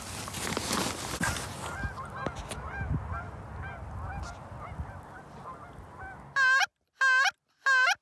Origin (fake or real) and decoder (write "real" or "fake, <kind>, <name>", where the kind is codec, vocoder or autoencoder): real